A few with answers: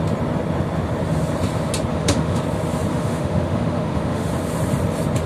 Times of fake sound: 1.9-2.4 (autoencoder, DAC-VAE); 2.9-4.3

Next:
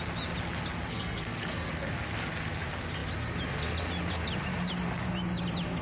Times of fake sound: 0.9-1.7 (codec, SNAC)

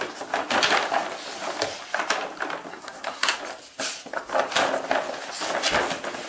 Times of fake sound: 2.7-3.4 (codec, SNAC)

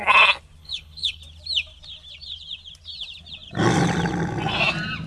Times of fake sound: 0.6-1.2 (codec, HILCodec)